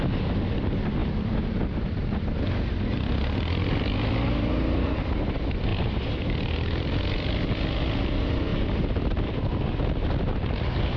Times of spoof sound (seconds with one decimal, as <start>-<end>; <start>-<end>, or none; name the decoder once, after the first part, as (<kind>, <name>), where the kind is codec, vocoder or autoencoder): 1.0-2.4 (vocoder, BigVGAN v2); 5.7-6.2; 8.5-9.5